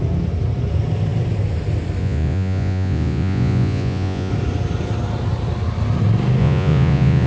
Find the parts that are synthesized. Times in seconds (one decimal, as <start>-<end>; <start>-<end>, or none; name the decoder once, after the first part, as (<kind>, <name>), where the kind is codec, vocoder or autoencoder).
2.0-4.3 (vocoder, Vocos); 6.4-7.3